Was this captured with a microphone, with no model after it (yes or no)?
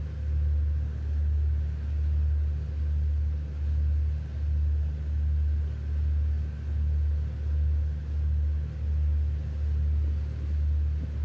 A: yes